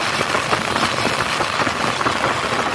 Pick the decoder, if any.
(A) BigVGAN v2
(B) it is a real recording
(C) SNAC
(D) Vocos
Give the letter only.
B